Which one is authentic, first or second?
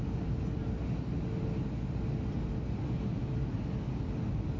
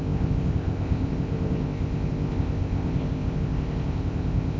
first